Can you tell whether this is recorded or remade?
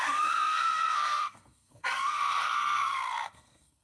remade